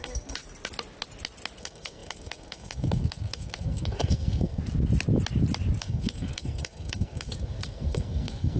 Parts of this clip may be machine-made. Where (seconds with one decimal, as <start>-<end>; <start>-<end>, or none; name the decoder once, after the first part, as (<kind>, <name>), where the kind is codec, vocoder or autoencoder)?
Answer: 0.0-0.4 (codec, SNAC); 1.6-4.6; 5.8-8.6

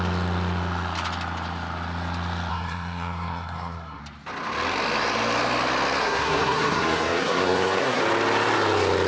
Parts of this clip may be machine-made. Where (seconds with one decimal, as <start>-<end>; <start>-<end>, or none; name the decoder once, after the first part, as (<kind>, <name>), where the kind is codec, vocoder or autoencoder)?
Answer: 2.5-4.0 (codec, SNAC); 6.0-8.0

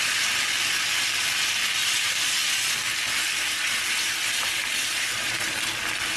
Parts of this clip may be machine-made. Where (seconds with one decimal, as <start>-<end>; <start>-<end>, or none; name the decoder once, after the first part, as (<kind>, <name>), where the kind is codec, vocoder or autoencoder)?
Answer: none

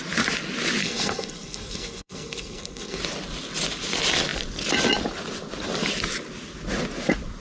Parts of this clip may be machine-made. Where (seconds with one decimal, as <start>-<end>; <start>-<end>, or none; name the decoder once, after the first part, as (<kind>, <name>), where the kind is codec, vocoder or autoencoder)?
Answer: 0.8-3.0 (codec, SNAC)

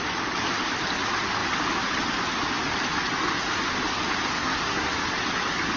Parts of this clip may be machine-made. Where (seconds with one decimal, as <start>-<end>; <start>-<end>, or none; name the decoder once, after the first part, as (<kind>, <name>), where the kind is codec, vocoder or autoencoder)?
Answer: 4.3-4.9 (codec, SNAC)

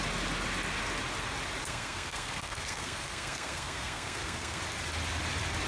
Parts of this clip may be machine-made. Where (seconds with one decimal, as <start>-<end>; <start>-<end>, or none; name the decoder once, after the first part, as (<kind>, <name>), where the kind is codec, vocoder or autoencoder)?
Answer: 1.6-4.6 (codec, SNAC)

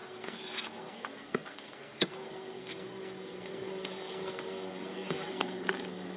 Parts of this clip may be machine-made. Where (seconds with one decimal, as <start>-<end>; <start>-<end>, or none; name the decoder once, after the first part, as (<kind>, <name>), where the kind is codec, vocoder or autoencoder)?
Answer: 0.0-6.2 (codec, SNAC)